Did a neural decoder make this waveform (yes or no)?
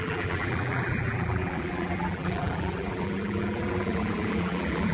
yes